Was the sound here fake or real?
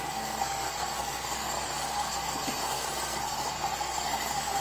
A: fake